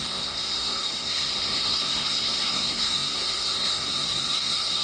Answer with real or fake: fake